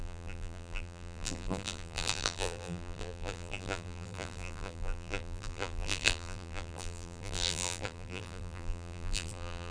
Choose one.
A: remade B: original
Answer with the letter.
A